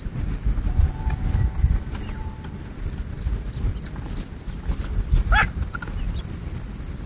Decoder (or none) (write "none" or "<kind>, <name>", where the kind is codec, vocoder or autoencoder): none